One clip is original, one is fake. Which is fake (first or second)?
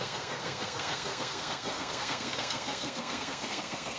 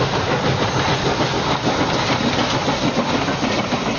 first